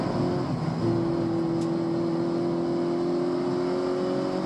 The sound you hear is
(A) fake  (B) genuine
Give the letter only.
B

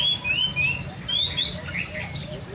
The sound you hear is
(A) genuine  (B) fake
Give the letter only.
A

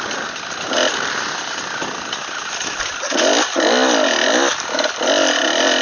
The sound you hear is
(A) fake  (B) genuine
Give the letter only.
B